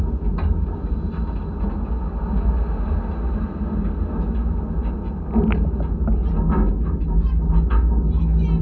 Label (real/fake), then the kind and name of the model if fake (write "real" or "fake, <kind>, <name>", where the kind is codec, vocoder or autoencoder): real